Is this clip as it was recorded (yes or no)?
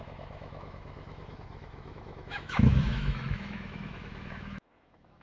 no